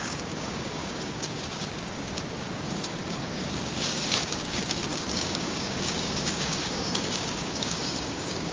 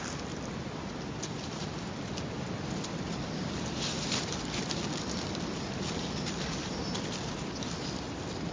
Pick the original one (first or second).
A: second